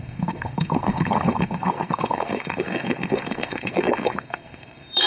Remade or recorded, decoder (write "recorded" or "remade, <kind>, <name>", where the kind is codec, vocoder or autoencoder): remade, codec, SNAC